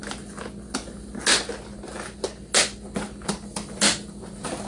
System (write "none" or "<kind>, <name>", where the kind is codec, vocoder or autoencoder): none